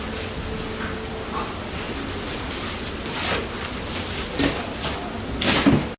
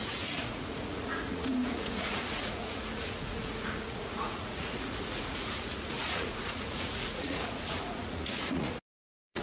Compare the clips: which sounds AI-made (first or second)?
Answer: second